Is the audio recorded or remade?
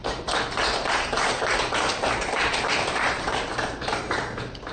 remade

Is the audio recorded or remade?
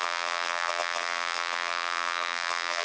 remade